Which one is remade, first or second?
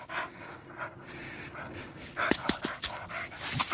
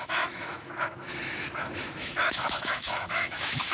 second